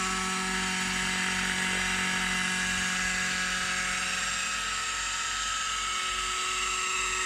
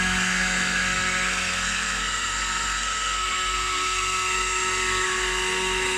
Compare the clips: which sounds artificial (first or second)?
second